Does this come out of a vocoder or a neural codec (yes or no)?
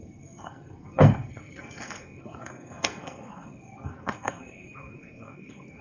yes